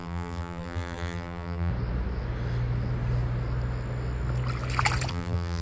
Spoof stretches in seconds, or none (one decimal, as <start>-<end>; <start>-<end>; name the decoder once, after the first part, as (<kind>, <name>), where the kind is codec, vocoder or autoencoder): 0.0-1.7 (vocoder, BigVGAN v2); 5.1-5.6